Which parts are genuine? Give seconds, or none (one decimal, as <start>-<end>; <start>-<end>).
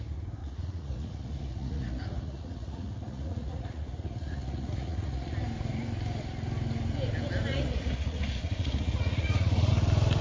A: 0.0-0.4; 5.3-7.5; 9.7-10.2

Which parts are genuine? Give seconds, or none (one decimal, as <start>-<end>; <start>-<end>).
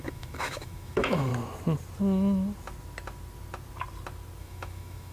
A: 1.3-4.4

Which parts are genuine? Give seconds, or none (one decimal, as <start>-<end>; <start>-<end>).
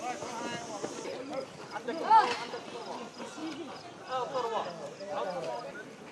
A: 0.0-6.1